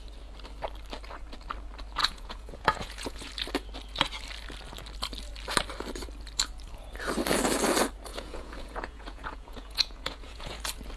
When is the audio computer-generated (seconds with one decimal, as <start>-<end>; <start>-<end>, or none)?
2.0-3.3; 8.1-10.6